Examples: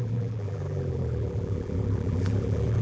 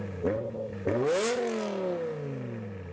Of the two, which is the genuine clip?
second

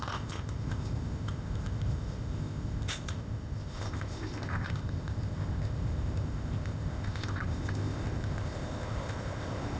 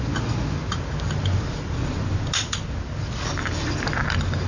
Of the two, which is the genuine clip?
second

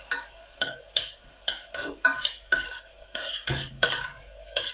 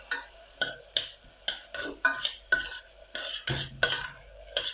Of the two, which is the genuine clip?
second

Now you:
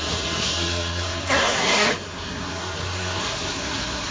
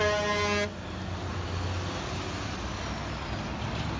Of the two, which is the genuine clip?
second